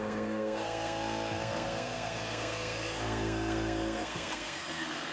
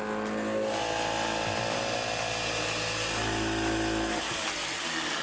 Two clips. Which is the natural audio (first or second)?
second